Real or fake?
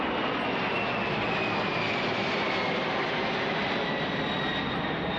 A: real